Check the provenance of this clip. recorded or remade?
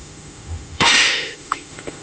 remade